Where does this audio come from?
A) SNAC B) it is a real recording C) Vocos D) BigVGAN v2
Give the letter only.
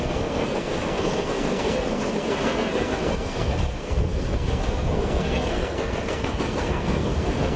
A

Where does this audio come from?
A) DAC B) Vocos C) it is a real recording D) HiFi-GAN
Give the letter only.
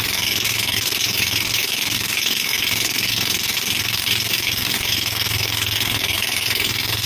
A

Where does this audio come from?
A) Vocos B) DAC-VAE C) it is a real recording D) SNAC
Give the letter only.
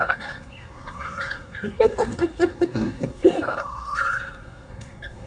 D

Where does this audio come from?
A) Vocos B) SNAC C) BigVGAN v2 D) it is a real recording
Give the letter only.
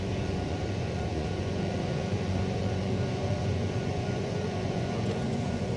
A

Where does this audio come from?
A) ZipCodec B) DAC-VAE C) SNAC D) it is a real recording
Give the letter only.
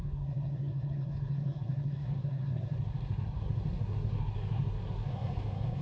C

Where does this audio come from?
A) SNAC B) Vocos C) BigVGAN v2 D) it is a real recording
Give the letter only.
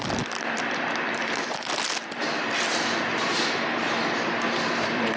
C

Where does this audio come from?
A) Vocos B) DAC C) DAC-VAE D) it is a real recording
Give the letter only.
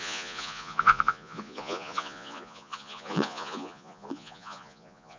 A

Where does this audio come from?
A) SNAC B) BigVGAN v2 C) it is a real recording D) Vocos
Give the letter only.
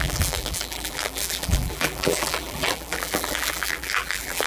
B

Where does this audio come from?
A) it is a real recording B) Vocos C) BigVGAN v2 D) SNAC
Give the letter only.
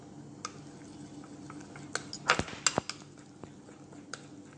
A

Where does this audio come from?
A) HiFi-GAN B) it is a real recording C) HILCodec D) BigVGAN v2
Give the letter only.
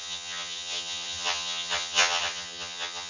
A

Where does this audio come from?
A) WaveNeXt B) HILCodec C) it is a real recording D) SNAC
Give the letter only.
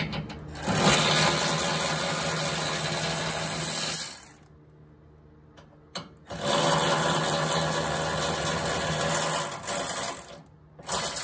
C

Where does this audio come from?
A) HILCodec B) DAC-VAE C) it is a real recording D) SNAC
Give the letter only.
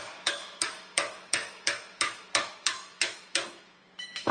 B